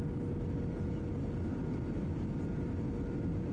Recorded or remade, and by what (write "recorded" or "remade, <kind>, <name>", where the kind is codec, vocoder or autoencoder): recorded